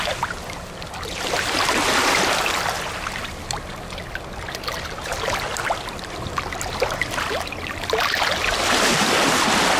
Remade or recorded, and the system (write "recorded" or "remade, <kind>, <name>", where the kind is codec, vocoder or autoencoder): recorded